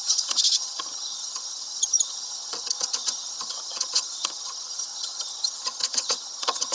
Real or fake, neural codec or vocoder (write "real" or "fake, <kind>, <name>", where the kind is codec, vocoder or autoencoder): fake, vocoder, HiFi-GAN